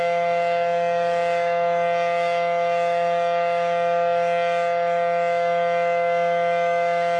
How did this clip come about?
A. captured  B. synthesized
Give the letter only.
B